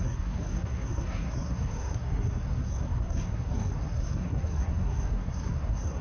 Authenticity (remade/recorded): remade